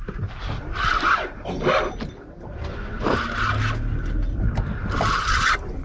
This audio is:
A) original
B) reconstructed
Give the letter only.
A